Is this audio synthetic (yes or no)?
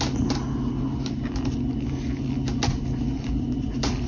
no